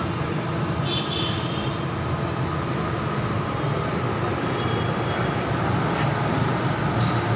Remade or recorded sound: recorded